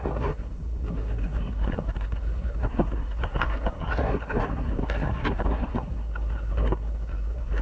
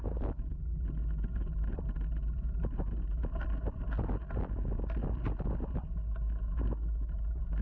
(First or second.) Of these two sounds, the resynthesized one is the first